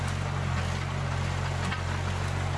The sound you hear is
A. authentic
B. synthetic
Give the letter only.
A